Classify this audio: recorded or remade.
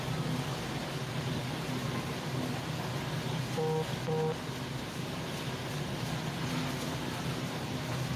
recorded